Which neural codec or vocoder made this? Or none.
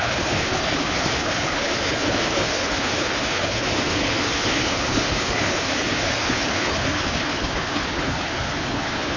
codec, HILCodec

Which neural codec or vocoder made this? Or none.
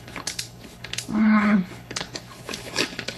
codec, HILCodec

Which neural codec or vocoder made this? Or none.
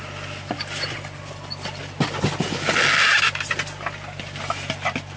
none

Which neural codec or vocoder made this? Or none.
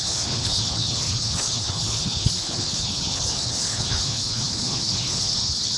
codec, HILCodec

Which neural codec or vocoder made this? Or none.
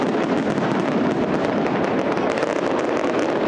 none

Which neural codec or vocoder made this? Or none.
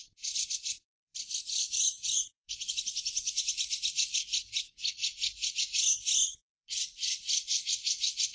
codec, HILCodec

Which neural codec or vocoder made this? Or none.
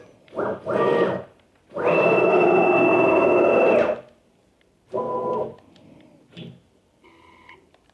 none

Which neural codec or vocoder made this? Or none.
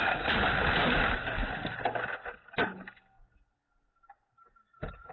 none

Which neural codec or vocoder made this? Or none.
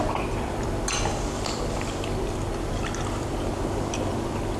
none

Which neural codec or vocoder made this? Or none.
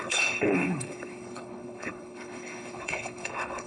codec, HILCodec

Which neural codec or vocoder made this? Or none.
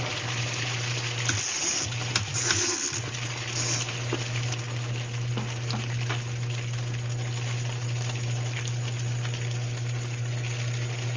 none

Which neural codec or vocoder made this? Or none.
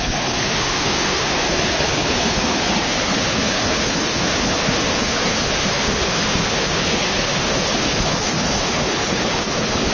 codec, HILCodec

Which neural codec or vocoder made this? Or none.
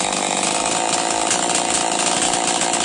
none